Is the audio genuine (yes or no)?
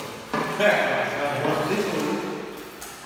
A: yes